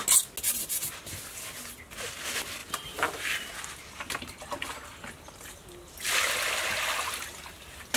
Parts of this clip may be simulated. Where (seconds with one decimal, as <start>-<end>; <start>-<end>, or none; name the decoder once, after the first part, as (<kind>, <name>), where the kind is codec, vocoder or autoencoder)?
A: none